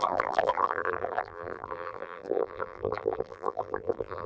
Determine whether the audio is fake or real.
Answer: fake